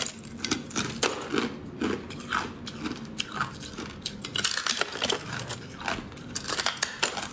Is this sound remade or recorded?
recorded